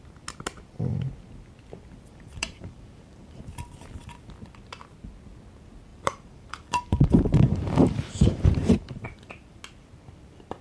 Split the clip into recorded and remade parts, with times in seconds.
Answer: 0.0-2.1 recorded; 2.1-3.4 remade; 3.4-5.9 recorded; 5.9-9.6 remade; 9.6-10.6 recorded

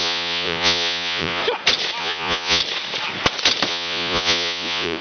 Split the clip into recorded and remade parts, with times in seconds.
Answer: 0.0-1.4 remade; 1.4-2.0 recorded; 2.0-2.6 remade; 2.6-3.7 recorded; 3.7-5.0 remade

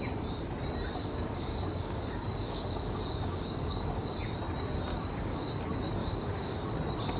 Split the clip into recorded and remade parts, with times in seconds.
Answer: 0.0-1.0 recorded; 1.0-4.2 remade; 4.2-4.9 recorded; 4.9-5.5 remade; 5.5-6.0 recorded; 6.0-6.7 remade; 6.7-7.2 recorded